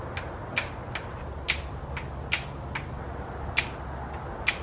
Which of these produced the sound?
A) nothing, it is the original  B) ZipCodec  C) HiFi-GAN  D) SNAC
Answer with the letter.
A